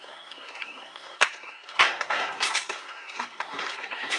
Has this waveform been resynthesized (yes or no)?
yes